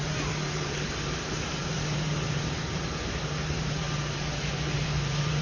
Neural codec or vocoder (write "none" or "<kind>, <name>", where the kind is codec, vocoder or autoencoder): vocoder, BigVGAN v2